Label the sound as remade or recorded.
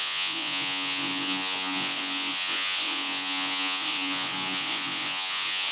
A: remade